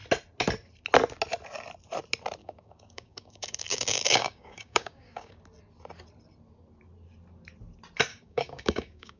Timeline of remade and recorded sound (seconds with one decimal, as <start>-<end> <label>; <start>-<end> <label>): 0.0-2.4 recorded; 2.4-5.4 remade; 5.4-8.1 recorded; 8.1-9.2 remade